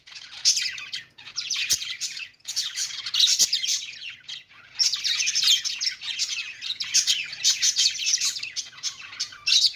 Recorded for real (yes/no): no